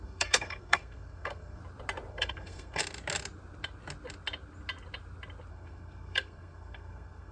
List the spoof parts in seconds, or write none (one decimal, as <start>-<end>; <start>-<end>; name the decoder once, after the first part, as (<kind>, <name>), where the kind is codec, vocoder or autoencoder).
0.0-1.6 (codec, SNAC); 2.1-2.8; 5.5-7.3